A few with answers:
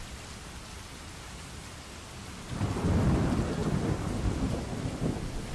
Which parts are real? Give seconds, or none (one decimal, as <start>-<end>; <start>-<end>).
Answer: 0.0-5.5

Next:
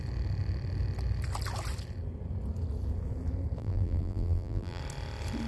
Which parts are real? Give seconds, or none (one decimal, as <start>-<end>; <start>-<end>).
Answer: 0.0-3.6; 4.8-5.5

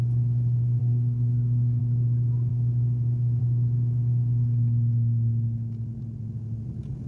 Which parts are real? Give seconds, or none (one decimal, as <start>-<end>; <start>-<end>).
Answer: 0.0-0.8; 1.8-7.1

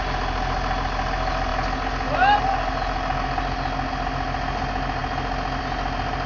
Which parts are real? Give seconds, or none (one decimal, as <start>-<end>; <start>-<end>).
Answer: 0.0-6.3

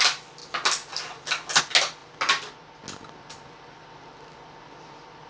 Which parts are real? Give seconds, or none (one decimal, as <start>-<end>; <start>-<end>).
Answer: 0.0-5.3